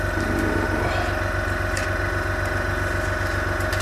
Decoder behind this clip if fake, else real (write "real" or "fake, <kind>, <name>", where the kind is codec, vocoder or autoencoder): real